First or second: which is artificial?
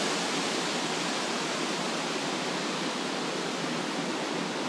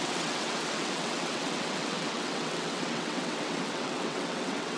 second